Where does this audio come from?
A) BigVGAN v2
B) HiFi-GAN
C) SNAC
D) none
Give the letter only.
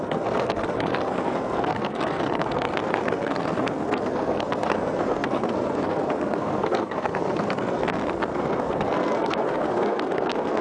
C